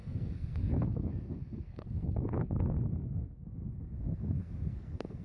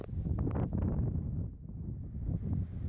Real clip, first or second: second